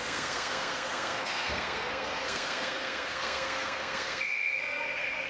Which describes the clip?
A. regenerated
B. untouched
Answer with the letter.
A